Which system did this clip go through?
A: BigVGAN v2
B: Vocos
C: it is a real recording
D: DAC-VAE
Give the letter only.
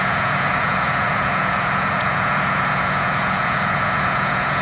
B